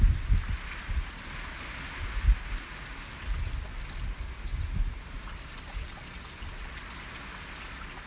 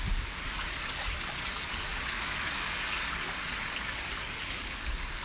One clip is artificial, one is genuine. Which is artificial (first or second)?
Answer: second